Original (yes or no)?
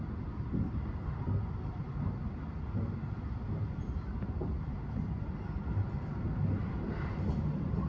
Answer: yes